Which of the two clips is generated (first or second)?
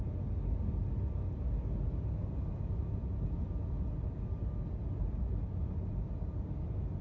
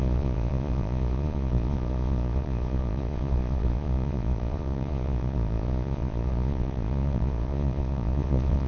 second